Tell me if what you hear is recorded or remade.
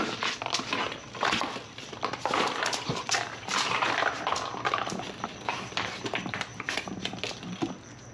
remade